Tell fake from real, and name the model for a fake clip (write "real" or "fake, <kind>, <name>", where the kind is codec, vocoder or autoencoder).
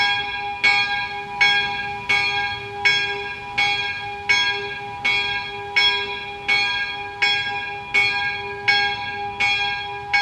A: real